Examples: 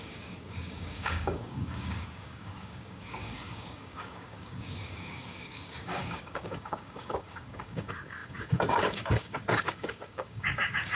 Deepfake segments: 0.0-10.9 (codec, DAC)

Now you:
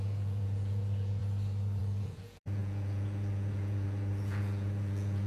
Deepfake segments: 0.0-1.2 (vocoder, Vocos); 1.8-5.3

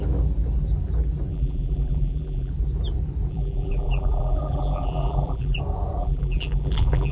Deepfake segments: 1.3-2.5 (vocoder, BigVGAN v2); 3.3-5.6; 6.0-7.1

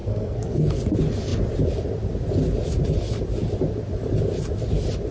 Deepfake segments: 0.0-0.8 (codec, SNAC)

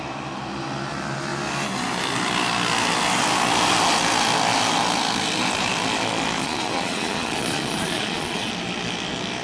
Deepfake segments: 6.4-8.5 (vocoder, Vocos)

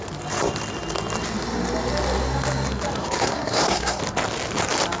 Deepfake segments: 3.0-4.0 (codec, SNAC)

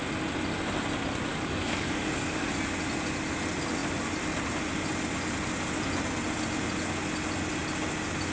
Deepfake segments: 1.3-2.5 (codec, DAC)